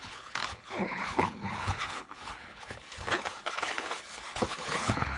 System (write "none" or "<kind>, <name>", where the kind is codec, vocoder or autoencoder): codec, HILCodec